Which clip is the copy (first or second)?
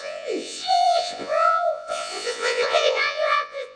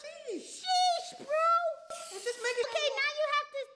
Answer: first